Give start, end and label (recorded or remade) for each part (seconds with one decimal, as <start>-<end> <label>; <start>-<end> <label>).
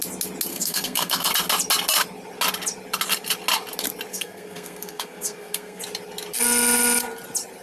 0.0-0.5 recorded; 0.5-1.3 remade; 1.3-4.1 recorded; 4.1-5.8 remade; 5.8-7.6 recorded